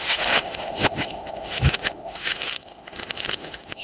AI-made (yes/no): yes